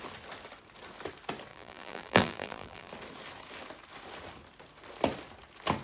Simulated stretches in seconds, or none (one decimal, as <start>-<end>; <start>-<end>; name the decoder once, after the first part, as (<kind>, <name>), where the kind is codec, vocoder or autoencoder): 1.5-2.9 (vocoder, BigVGAN v2)